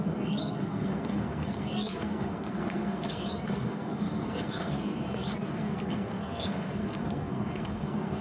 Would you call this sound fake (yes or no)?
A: yes